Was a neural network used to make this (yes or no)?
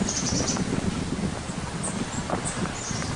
no